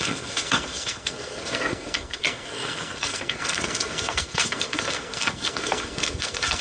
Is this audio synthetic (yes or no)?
yes